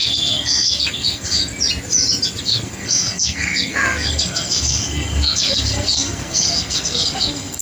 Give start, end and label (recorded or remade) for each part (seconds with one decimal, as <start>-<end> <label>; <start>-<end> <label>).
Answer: 0.0-1.4 remade; 1.4-2.4 recorded; 2.4-7.6 remade